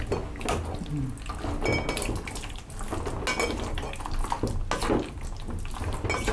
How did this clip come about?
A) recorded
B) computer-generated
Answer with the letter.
A